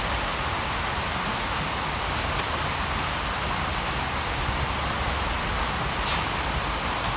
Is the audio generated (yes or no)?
no